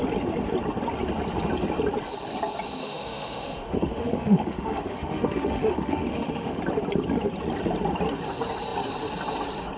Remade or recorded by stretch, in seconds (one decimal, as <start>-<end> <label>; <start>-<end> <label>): 0.0-2.8 recorded; 2.8-6.6 remade; 6.6-9.8 recorded